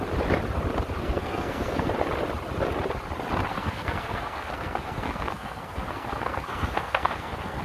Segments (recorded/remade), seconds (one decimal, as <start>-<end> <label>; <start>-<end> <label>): 0.0-1.0 recorded; 1.0-1.9 remade; 1.9-3.5 recorded; 3.5-7.6 remade